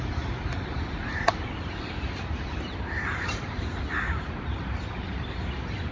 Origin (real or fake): fake